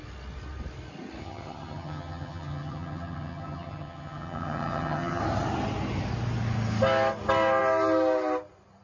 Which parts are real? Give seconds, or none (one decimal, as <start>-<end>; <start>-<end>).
0.0-1.2; 5.2-8.8